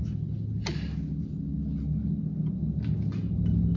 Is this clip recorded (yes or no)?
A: yes